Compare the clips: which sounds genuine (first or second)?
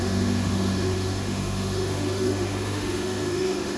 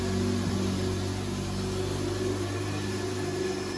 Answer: second